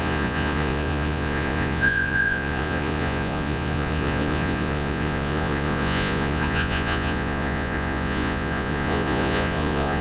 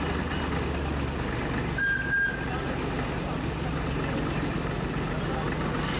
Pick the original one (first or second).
second